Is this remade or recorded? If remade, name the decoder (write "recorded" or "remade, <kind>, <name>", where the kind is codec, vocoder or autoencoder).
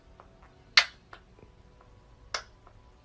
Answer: recorded